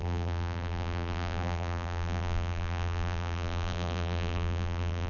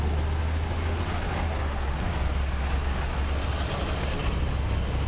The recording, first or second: second